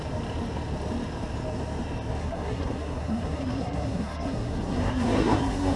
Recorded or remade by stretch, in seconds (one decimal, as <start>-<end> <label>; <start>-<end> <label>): 0.0-2.2 recorded; 2.2-5.8 remade